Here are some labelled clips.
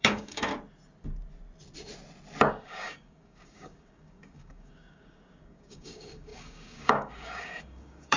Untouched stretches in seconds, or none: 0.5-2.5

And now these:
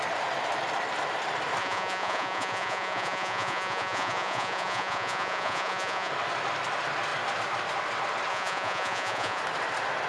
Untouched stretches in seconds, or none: 0.0-1.6; 6.1-8.3; 9.4-10.1

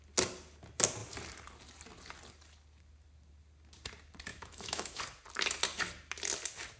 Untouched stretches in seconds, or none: 0.0-4.3; 5.0-6.8

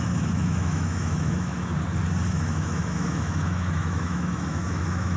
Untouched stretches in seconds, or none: 1.7-2.3